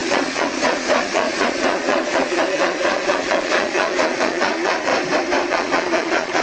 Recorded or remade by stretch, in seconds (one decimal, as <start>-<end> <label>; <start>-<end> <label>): 0.0-4.9 remade; 4.9-5.5 recorded; 5.5-6.4 remade